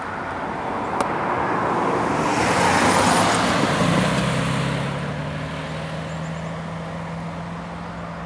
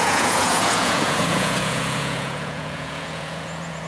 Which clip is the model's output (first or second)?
second